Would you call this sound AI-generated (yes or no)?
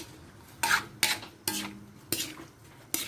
no